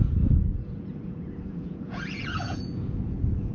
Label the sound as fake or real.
fake